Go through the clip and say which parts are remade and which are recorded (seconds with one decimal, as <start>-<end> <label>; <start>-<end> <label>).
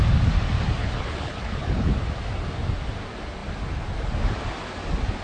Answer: 0.0-0.8 recorded; 0.8-1.9 remade; 1.9-5.2 recorded